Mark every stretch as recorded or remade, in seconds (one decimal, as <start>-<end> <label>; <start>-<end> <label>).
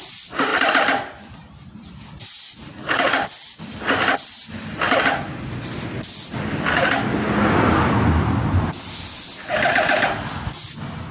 0.0-11.1 recorded